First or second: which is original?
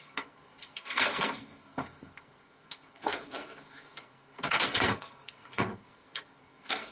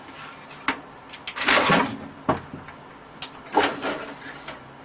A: second